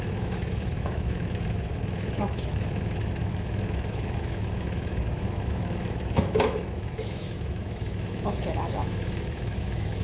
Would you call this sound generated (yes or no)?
yes